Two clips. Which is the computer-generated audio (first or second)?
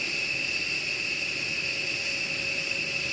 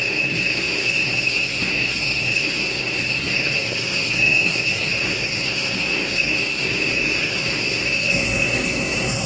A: second